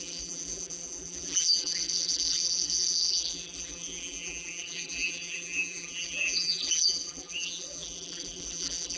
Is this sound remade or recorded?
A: remade